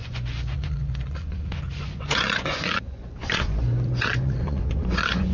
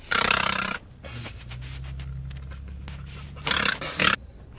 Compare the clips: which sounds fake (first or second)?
first